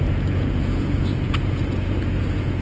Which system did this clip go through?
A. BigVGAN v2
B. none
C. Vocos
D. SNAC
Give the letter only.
C